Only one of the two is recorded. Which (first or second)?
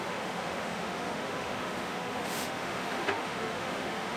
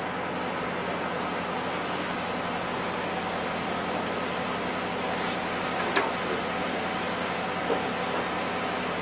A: second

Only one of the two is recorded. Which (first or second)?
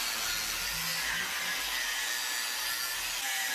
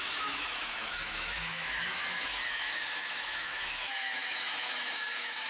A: first